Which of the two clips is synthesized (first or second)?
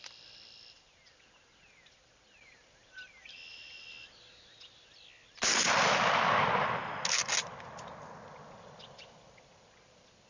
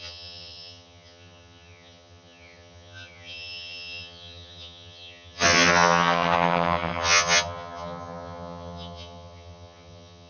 second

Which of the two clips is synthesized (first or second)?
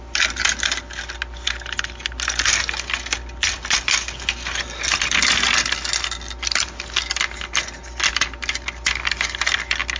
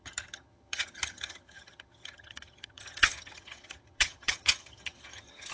second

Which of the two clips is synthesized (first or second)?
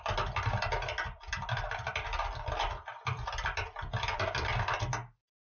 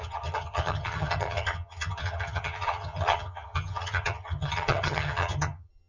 second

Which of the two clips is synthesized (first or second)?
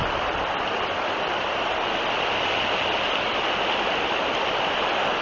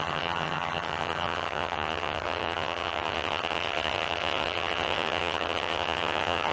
second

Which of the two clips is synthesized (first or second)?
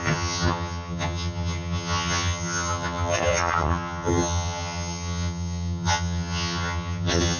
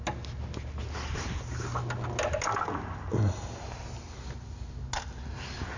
first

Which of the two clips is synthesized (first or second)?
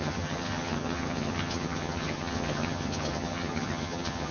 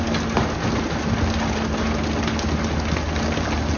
first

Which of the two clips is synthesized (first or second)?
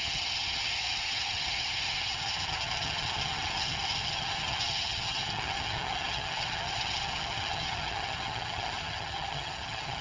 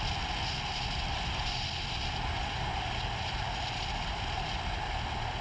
first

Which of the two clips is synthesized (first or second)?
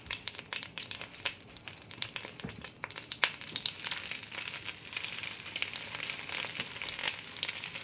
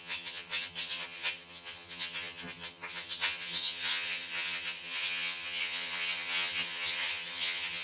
second